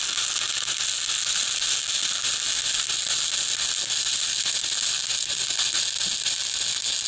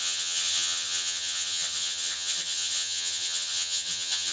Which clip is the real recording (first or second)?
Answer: first